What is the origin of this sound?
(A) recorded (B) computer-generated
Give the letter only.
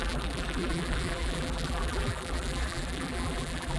B